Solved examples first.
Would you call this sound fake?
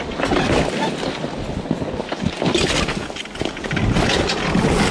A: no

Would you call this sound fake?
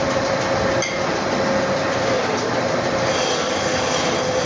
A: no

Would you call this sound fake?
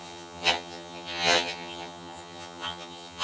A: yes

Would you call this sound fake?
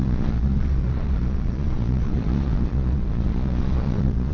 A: yes